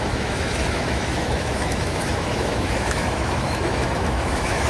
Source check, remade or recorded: remade